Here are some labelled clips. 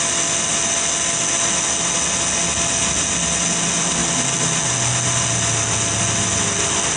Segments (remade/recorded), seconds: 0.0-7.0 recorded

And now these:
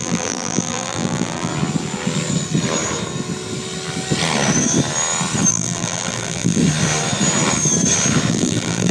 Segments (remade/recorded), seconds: 0.0-1.5 remade; 1.5-5.5 recorded; 5.5-6.6 remade; 6.6-8.3 recorded; 8.3-8.9 remade

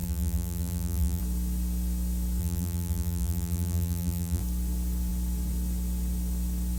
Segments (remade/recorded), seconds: 0.0-1.2 remade; 1.2-2.4 recorded; 2.4-4.4 remade; 4.4-6.8 recorded

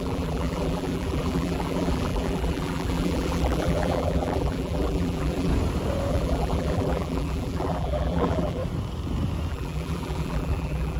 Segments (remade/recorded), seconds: 0.0-5.5 remade; 5.5-6.1 recorded; 6.1-8.6 remade; 8.6-9.5 recorded; 9.5-11.0 remade

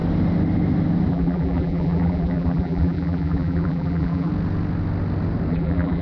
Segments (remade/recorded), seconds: 0.0-1.1 recorded; 1.1-4.3 remade; 4.3-5.5 recorded; 5.5-6.0 remade

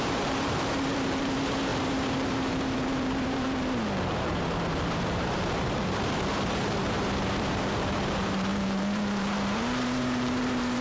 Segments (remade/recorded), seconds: 0.0-10.8 remade